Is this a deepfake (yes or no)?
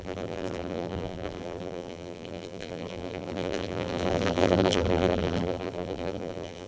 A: yes